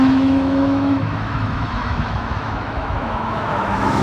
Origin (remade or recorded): remade